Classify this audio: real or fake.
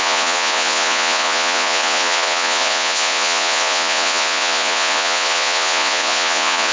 fake